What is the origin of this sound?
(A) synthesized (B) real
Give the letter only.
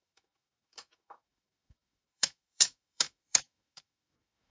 A